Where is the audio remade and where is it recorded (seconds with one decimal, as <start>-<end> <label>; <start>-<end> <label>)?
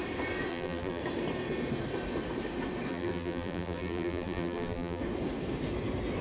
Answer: 0.0-0.5 recorded; 0.5-1.0 remade; 1.0-2.9 recorded; 2.9-5.0 remade; 5.0-6.2 recorded